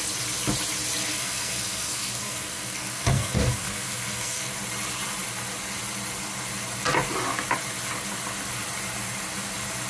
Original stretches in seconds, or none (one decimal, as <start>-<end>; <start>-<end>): 0.0-1.1; 4.5-9.9